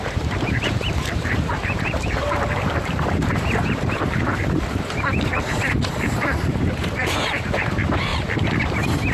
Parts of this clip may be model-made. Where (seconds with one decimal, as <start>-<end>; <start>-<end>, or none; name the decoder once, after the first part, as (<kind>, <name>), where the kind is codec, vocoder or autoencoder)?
0.0-8.1 (vocoder, BigVGAN v2); 8.6-9.1